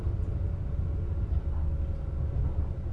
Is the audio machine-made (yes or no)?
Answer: no